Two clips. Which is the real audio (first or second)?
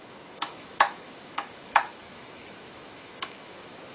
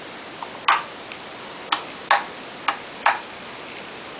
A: second